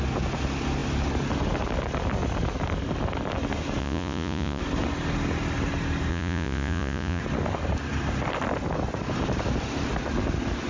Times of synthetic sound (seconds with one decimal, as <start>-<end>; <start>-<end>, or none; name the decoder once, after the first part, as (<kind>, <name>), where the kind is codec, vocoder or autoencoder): 3.8-4.6 (vocoder, Vocos); 6.1-7.2